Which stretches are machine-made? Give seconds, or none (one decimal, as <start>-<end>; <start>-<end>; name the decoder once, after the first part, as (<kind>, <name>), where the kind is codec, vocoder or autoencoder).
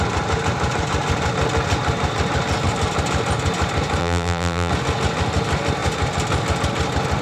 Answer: 4.0-4.7 (vocoder, BigVGAN v2)